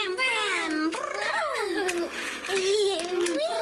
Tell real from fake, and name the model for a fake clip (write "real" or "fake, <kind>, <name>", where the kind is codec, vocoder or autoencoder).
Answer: fake, autoencoder, DAC-VAE